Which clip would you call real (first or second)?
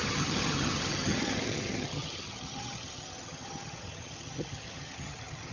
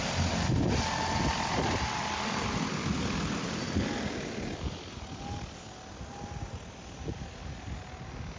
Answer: second